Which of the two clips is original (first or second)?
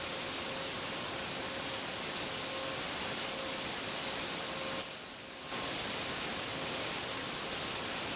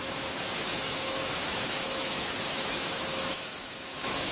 first